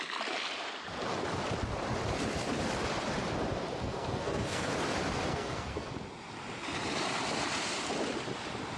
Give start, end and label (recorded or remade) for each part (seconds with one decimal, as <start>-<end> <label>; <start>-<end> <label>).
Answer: 0.0-3.8 recorded; 3.8-4.7 remade; 4.7-5.3 recorded; 5.3-5.9 remade; 5.9-8.8 recorded